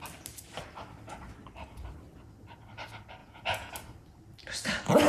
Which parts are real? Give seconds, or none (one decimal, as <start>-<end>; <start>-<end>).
0.0-3.2; 3.7-5.1